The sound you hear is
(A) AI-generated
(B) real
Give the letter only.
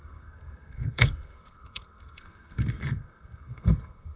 A